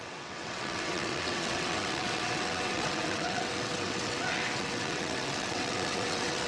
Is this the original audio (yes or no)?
no